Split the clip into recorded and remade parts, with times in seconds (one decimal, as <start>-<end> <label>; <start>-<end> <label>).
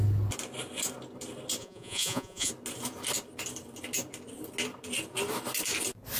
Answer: 0.0-1.6 recorded; 1.6-2.5 remade; 2.5-6.2 recorded